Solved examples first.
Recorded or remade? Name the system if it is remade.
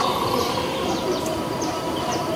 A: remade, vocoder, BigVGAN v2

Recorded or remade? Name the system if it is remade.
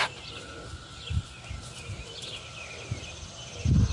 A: remade, vocoder, BigVGAN v2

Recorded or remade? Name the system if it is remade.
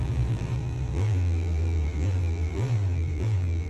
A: remade, vocoder, BigVGAN v2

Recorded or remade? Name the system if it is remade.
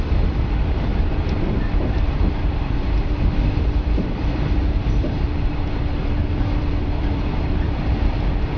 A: remade, vocoder, BigVGAN v2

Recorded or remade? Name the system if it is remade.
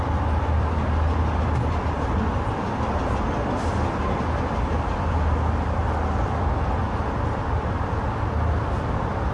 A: remade, vocoder, BigVGAN v2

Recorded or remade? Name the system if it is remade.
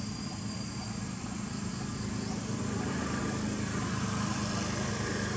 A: recorded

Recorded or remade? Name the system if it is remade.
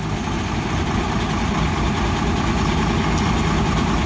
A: recorded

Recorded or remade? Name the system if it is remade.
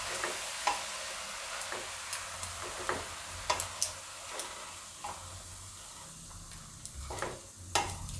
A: recorded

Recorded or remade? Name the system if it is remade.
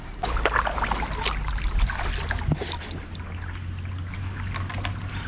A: recorded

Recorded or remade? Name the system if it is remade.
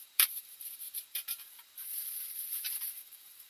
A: remade, vocoder, BigVGAN v2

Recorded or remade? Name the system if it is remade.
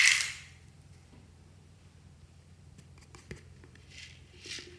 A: remade, vocoder, BigVGAN v2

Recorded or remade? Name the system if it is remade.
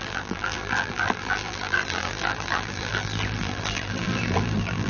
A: remade, vocoder, BigVGAN v2